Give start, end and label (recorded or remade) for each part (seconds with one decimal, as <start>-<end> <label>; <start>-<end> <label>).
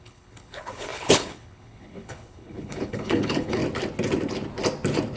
0.0-3.6 remade; 3.6-5.2 recorded